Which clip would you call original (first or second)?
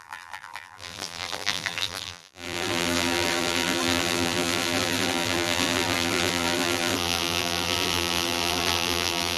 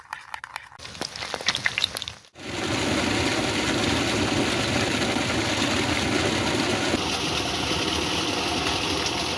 second